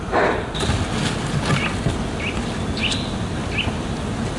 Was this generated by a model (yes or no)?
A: no